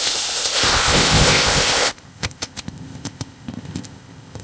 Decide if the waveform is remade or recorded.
remade